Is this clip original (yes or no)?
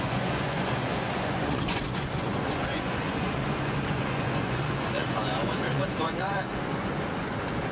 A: no